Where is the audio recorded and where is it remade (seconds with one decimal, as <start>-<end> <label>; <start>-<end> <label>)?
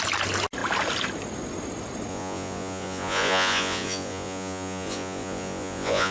0.0-2.1 recorded; 2.1-6.1 remade